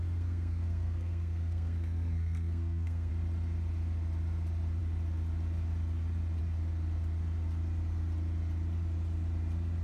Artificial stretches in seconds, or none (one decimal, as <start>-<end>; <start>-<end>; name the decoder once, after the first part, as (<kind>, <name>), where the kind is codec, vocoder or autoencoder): 0.0-3.1 (codec, SNAC)